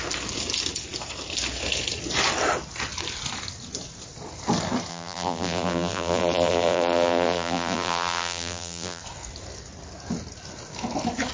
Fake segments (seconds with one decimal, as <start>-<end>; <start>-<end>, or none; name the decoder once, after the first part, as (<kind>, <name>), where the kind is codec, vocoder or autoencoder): 4.9-9.0 (vocoder, BigVGAN v2)